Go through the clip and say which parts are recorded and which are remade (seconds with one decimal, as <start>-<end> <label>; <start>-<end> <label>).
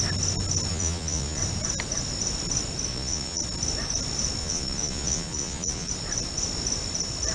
0.0-0.7 recorded; 0.7-1.4 remade; 1.4-2.9 recorded; 2.9-3.4 remade; 3.4-4.4 recorded; 4.4-5.9 remade; 5.9-7.3 recorded